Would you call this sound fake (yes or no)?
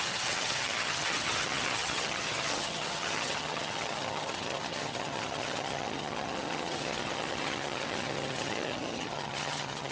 yes